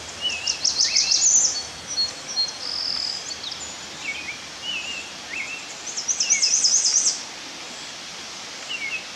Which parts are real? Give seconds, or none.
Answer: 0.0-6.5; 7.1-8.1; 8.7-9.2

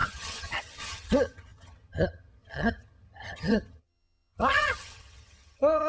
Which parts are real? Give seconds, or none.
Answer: none